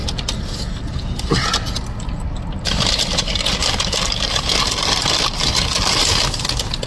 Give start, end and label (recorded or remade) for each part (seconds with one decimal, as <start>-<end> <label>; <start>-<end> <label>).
0.0-3.6 recorded; 3.6-6.0 remade; 6.0-6.9 recorded